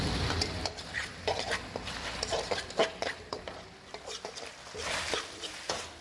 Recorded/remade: remade